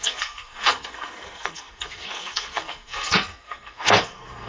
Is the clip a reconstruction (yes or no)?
yes